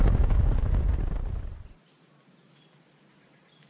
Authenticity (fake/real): real